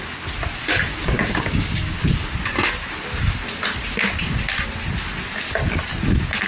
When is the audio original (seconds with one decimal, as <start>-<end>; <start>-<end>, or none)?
0.0-0.9; 2.0-6.5